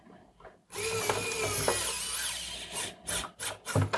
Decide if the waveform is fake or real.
real